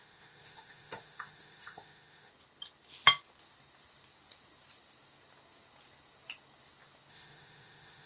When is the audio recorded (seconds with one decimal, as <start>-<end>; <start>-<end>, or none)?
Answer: 2.3-7.1